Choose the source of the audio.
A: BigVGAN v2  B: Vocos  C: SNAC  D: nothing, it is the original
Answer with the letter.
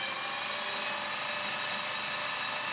D